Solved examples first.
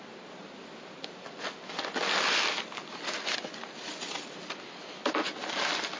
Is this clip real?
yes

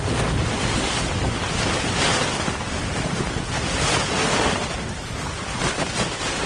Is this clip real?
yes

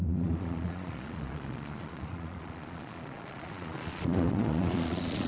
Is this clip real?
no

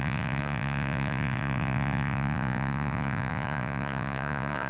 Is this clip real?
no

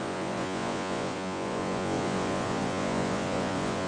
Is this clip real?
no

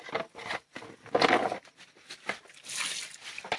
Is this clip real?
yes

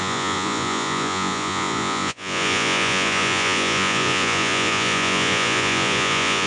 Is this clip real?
no